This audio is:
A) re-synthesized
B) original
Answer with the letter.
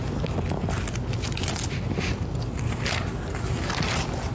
B